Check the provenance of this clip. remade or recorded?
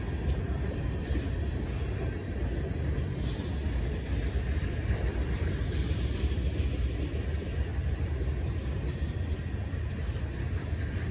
recorded